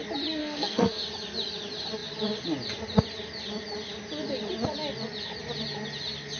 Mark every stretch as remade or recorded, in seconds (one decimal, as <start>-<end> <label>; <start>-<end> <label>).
0.0-0.4 recorded; 0.4-1.0 remade; 1.0-6.4 recorded